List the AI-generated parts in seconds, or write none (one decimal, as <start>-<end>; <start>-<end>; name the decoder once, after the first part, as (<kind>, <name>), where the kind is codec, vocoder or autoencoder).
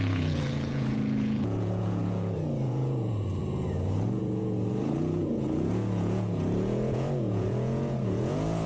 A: 0.0-8.7 (vocoder, Vocos)